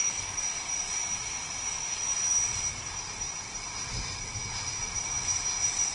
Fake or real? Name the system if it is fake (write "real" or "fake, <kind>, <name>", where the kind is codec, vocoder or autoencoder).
real